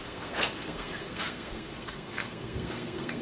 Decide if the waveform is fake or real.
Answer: fake